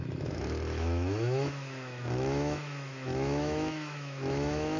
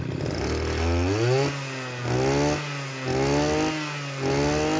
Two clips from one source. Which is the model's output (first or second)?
first